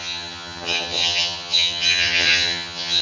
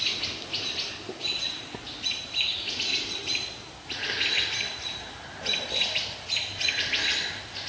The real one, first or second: second